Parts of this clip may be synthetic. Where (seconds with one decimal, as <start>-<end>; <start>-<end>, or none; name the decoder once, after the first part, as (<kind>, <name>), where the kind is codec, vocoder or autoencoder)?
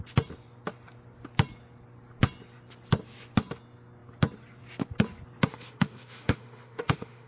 5.5-7.3 (autoencoder, DAC-VAE)